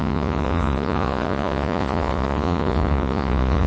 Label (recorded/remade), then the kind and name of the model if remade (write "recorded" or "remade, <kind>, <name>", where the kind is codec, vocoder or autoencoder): remade, vocoder, Vocos